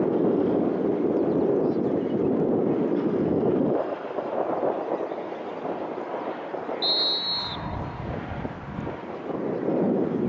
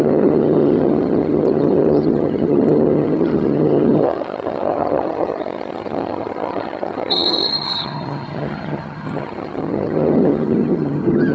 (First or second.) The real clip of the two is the first